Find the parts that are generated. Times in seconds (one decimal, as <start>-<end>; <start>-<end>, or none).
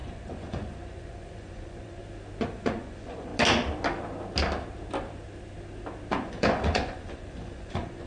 0.0-2.0; 2.5-3.3; 6.1-8.1